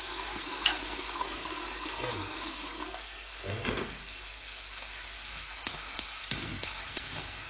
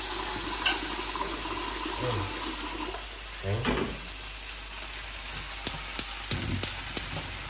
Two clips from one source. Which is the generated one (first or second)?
first